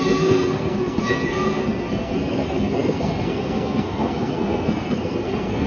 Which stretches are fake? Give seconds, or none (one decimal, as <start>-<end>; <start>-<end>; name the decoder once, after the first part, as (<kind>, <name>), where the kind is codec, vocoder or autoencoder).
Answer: 0.0-5.7 (codec, SNAC)